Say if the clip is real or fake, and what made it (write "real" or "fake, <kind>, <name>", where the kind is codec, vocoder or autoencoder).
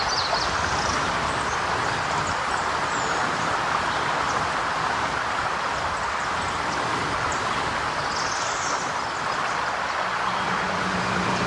real